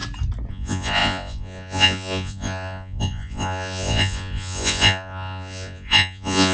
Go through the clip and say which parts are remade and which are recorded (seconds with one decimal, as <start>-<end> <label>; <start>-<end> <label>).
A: 0.0-0.5 recorded; 0.5-6.5 remade